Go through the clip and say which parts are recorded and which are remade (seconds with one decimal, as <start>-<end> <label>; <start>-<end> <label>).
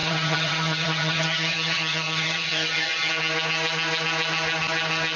0.0-3.1 remade; 3.1-5.2 recorded